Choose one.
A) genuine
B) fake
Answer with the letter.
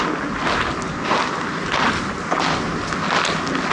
A